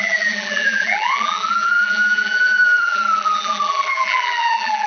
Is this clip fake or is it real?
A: fake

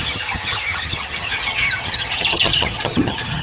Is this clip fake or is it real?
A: fake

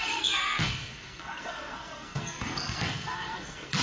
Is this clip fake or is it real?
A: fake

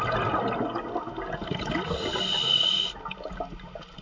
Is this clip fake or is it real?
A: real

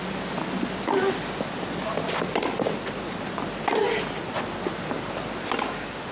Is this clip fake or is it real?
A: real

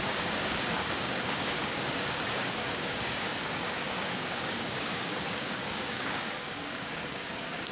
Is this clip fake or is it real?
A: fake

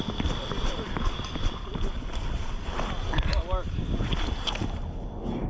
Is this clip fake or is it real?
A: real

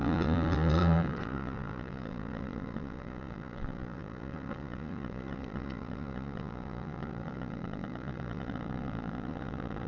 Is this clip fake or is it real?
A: fake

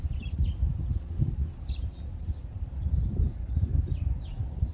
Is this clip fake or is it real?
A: real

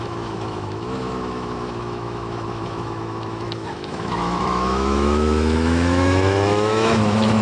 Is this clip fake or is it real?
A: fake